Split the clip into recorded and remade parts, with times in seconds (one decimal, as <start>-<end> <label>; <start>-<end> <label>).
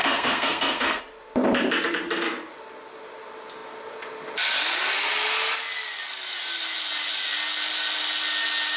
0.0-1.0 remade; 1.0-8.8 recorded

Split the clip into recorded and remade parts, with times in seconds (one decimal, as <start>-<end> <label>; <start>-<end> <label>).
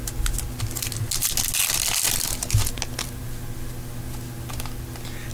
0.0-5.3 recorded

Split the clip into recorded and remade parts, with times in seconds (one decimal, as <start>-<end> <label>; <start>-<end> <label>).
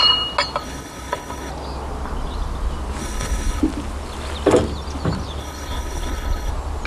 0.0-0.6 recorded; 0.6-1.5 remade; 1.5-3.0 recorded; 3.0-3.6 remade; 3.6-5.4 recorded; 5.4-6.5 remade; 6.5-6.9 recorded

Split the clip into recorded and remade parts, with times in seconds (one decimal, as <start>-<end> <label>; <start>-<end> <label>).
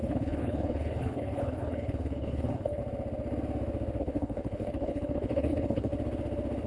0.0-2.8 remade; 2.8-4.0 recorded; 4.0-5.9 remade; 5.9-6.7 recorded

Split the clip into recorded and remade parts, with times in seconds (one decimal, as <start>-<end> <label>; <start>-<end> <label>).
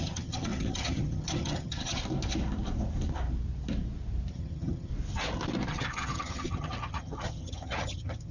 0.0-2.0 remade; 2.0-4.3 recorded; 4.3-4.9 remade; 4.9-5.7 recorded; 5.7-8.3 remade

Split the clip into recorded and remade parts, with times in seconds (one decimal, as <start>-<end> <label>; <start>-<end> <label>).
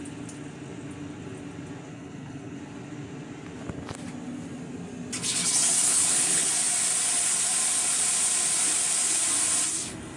0.0-1.9 recorded; 1.9-2.6 remade; 2.6-5.9 recorded; 5.9-6.5 remade; 6.5-10.2 recorded